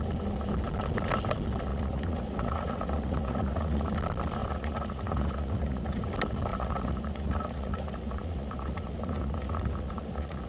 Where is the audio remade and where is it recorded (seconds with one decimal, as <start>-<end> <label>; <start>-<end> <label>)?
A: 0.0-1.7 recorded; 1.7-3.9 remade; 3.9-4.4 recorded; 4.4-6.0 remade; 6.0-6.5 recorded; 6.5-10.5 remade